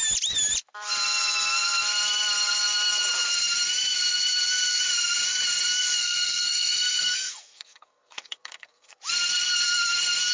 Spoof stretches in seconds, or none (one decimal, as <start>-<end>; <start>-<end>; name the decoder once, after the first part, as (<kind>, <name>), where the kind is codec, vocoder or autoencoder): 6.0-9.0 (codec, SNAC)